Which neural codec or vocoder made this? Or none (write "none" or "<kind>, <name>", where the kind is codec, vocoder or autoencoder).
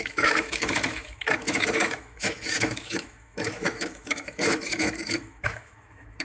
autoencoder, DAC-VAE